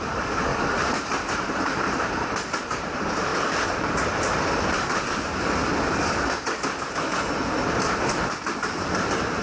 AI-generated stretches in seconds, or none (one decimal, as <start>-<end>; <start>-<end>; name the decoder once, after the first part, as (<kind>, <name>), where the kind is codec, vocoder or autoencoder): 0.0-3.3 (vocoder, BigVGAN v2); 4.0-5.6; 7.7-9.4

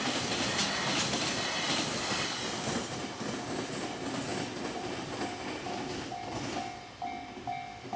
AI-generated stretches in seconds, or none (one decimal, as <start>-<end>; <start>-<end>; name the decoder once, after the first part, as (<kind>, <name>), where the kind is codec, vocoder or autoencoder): none